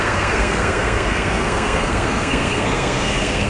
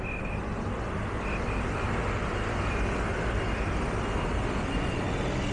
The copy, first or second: first